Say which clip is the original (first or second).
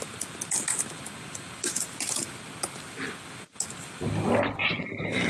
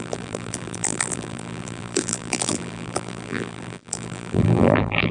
first